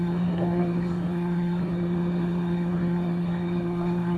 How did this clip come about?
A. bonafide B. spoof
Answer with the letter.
B